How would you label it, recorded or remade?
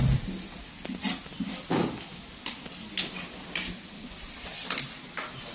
recorded